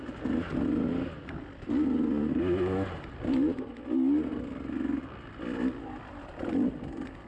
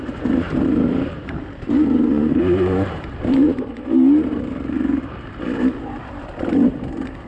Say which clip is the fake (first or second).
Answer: second